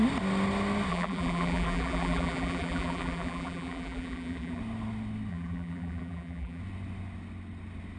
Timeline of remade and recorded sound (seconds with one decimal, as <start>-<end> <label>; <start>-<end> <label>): 0.0-0.9 recorded; 0.9-4.6 remade; 4.6-5.3 recorded; 5.3-6.6 remade; 6.6-8.0 recorded